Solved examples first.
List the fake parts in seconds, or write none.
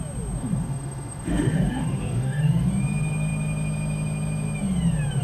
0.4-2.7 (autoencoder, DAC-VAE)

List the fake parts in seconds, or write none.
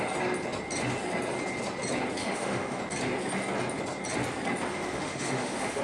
2.2-2.8 (autoencoder, DAC-VAE); 4.7-5.8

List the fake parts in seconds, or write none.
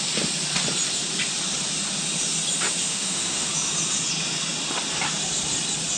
2.8-3.5 (autoencoder, DAC-VAE)